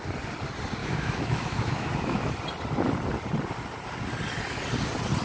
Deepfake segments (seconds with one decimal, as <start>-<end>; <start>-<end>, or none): 0.8-2.3